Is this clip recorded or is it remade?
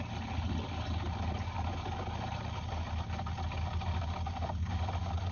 recorded